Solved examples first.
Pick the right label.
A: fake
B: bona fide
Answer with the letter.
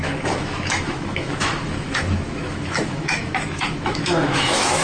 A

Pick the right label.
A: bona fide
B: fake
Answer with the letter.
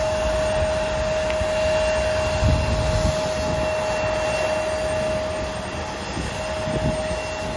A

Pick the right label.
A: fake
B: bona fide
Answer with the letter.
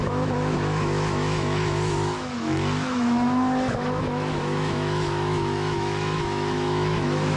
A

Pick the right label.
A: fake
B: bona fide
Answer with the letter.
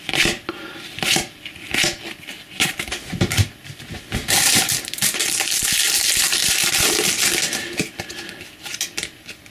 B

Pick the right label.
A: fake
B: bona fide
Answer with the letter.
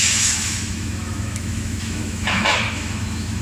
A